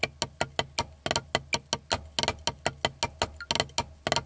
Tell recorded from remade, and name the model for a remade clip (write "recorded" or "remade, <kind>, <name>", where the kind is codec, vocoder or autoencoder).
recorded